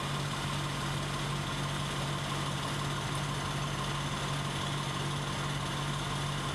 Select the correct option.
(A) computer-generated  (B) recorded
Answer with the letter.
B